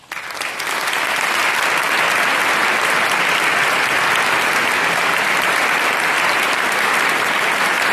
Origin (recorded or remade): recorded